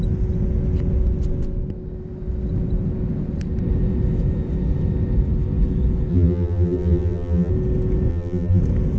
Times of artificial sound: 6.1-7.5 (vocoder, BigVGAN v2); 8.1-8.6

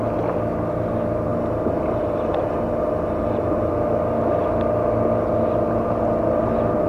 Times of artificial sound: 1.3-3.7 (vocoder, BigVGAN v2)

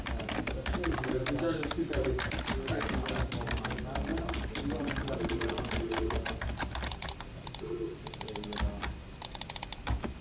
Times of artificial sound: 4.1-9.1 (vocoder, BigVGAN v2)